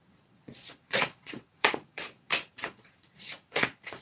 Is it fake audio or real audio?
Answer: fake